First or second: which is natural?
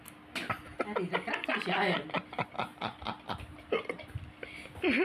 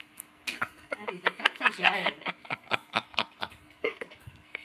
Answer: first